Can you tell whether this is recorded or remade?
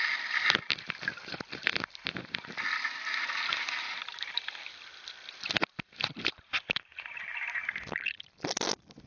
recorded